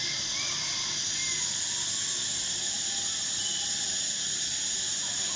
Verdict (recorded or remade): recorded